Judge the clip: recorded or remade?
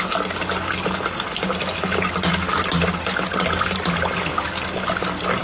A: recorded